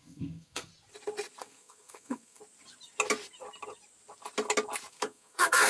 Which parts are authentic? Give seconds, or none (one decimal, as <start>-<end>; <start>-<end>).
0.7-1.4; 2.4-4.9